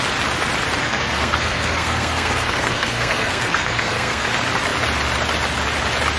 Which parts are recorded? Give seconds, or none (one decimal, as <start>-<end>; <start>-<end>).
0.0-0.8; 4.3-6.2